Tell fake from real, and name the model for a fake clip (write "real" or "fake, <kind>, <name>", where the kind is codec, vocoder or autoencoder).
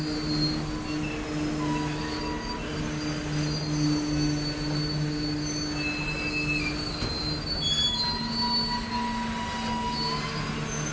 real